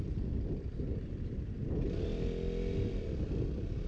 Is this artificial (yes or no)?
no